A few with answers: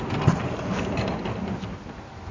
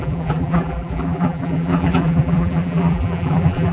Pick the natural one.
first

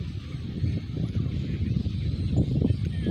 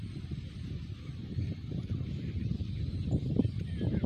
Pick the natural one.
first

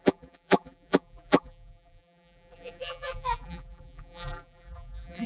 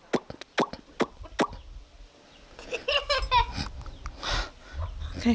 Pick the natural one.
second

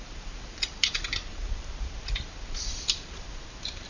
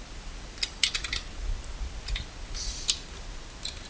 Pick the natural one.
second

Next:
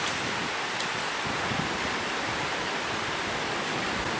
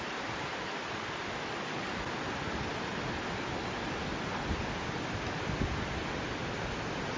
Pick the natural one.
second